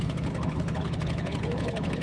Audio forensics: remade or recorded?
remade